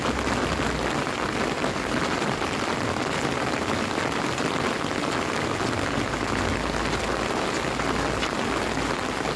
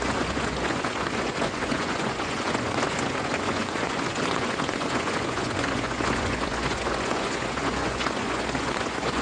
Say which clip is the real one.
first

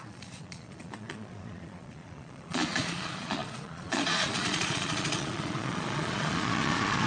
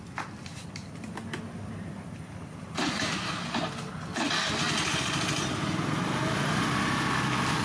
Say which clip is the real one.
second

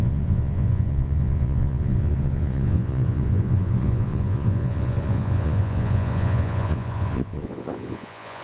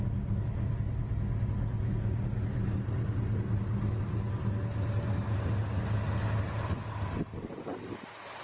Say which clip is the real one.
second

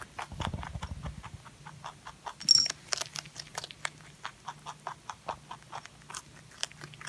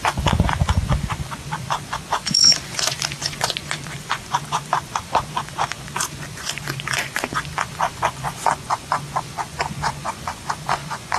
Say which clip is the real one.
first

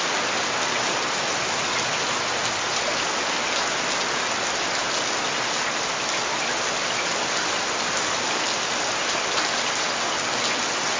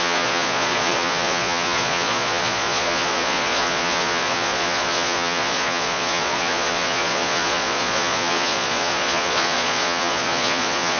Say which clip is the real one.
first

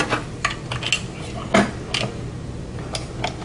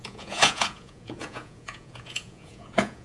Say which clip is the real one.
first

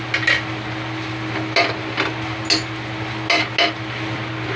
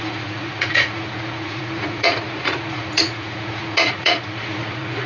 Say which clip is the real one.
first